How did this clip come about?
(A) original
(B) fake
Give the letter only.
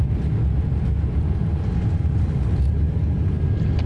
A